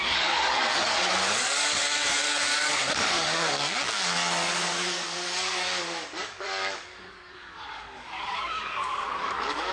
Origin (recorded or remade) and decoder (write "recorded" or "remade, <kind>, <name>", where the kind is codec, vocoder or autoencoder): remade, codec, DAC